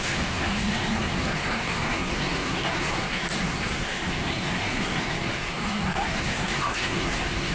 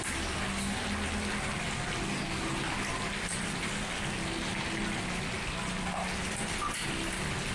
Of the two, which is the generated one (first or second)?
first